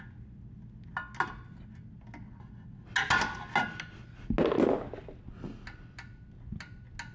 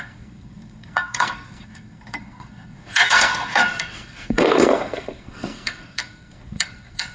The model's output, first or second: second